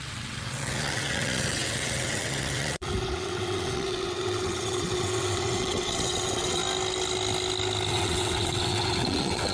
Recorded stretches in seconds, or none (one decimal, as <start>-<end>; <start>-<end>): 6.6-7.9